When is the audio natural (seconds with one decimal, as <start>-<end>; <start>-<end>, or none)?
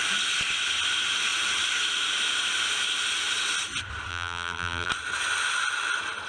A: 0.0-4.1; 4.9-6.3